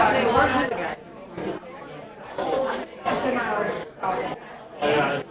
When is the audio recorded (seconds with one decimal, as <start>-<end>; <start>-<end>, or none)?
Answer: 0.0-0.8; 4.0-5.3